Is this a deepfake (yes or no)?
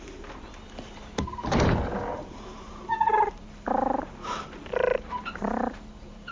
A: yes